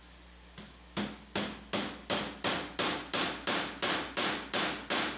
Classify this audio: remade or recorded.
recorded